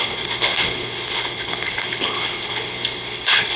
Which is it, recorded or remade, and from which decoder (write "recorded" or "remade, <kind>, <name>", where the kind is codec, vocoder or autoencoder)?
remade, codec, HILCodec